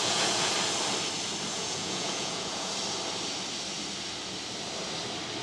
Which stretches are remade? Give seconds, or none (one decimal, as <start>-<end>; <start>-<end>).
0.0-0.5; 1.5-2.7